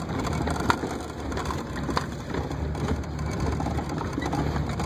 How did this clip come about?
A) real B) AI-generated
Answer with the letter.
A